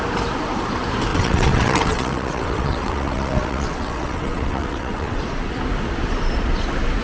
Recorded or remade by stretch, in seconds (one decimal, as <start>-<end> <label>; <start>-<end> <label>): 0.0-1.1 recorded; 1.1-5.2 remade; 5.2-7.0 recorded